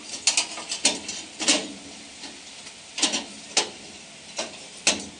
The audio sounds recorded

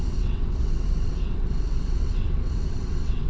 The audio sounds remade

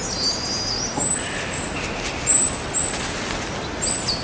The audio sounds recorded